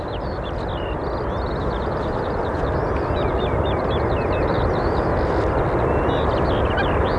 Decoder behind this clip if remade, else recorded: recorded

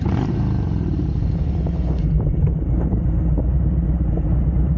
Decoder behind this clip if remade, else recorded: remade, vocoder, BigVGAN v2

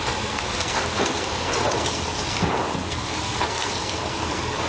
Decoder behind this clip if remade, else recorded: remade, codec, SNAC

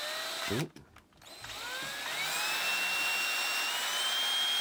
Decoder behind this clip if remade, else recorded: recorded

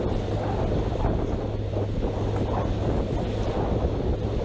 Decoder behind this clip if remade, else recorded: recorded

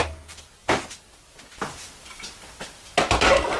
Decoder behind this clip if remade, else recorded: recorded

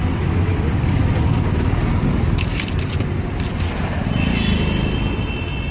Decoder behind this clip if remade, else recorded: recorded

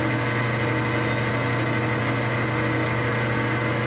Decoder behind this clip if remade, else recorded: recorded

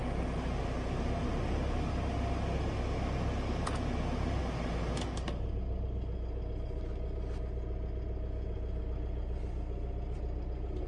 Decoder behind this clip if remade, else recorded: recorded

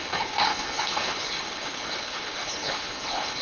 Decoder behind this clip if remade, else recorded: remade, codec, HILCodec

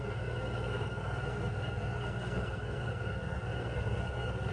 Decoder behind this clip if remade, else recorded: remade, codec, SNAC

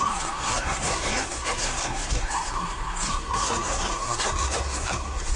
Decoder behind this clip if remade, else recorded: remade, codec, SNAC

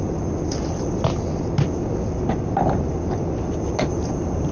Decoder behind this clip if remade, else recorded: recorded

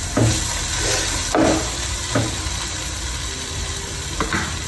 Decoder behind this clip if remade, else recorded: recorded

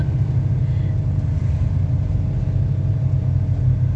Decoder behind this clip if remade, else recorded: recorded